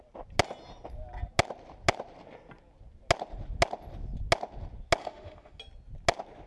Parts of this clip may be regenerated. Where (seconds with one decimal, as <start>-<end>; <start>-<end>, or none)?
5.0-5.6